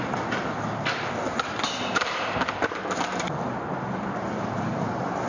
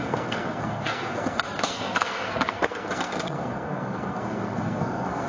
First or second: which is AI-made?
second